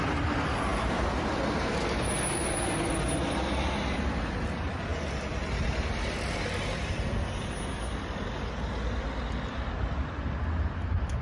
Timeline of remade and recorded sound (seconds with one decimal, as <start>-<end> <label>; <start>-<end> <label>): 0.0-11.2 recorded